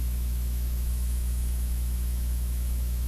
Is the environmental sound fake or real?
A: fake